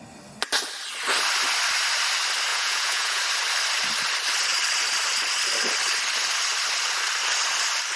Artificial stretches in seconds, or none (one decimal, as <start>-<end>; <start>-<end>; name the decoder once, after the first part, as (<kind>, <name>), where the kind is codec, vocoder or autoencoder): 2.5-3.2 (vocoder, Vocos)

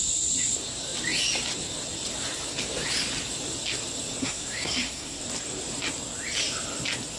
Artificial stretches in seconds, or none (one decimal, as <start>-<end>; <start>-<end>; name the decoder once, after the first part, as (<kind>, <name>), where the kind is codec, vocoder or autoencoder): 4.2-5.2 (codec, SNAC)

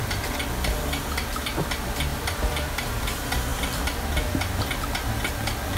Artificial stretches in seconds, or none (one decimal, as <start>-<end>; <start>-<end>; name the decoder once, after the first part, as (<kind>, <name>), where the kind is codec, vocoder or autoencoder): 2.1-2.7 (vocoder, BigVGAN v2)

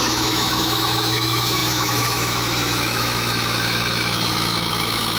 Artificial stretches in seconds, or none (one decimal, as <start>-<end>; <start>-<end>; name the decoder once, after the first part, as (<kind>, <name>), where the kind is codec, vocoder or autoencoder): 0.0-5.2 (autoencoder, DAC-VAE)